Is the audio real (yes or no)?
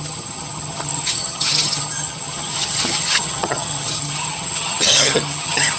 no